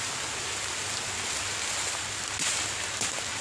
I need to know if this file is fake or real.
real